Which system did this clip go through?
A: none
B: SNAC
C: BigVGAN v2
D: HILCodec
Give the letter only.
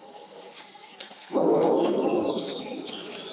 B